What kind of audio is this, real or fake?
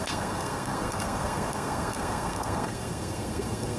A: fake